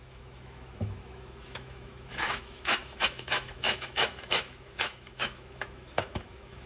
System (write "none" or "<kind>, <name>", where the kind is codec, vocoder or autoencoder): autoencoder, DAC-VAE